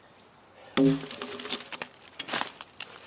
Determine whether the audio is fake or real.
real